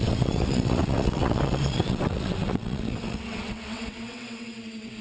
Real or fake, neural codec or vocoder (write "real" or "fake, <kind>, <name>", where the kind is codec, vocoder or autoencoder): fake, vocoder, WaveNeXt